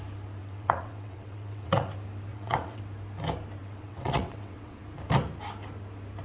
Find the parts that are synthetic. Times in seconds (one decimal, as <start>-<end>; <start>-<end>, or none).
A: 0.4-1.9; 2.3-2.8; 3.6-4.8